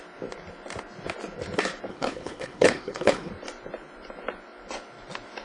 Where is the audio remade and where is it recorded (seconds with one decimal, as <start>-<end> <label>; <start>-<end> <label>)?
0.0-1.9 recorded; 1.9-3.3 remade; 3.3-5.4 recorded